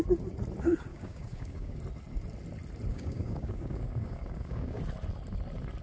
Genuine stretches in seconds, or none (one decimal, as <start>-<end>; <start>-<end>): 0.0-0.9; 1.8-2.9; 4.8-5.8